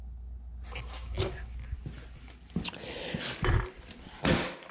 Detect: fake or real real